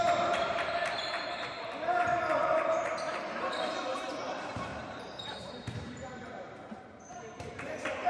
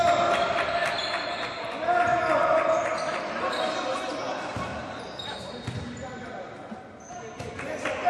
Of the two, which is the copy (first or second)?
first